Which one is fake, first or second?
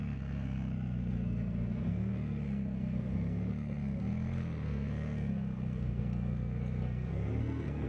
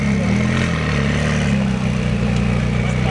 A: first